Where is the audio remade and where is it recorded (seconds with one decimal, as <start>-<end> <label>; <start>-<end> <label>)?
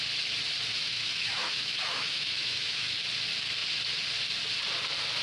0.0-0.7 recorded; 0.7-3.0 remade; 3.0-5.2 recorded